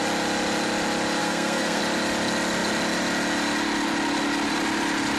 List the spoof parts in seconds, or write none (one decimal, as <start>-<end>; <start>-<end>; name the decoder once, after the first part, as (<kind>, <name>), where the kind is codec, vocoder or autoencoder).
1.2-1.8 (codec, SNAC)